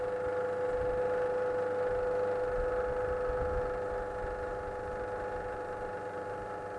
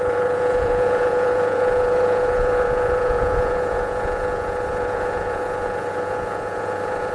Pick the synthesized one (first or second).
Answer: second